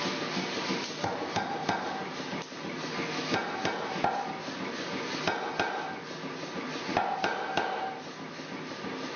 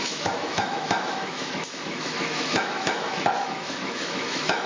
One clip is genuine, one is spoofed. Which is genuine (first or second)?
first